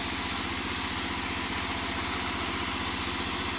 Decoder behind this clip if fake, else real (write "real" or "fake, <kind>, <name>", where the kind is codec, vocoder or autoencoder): real